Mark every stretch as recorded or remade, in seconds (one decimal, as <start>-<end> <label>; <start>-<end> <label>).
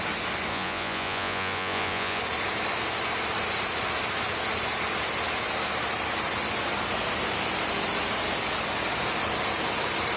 0.0-0.5 recorded; 0.5-2.2 remade; 2.2-10.2 recorded